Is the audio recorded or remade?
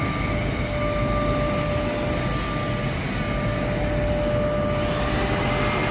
recorded